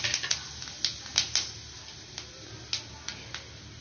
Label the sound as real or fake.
real